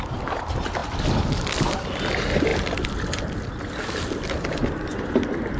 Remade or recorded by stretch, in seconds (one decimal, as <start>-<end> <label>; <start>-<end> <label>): 0.0-5.6 recorded